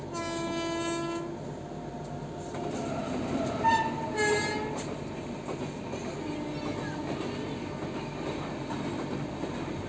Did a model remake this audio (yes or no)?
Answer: no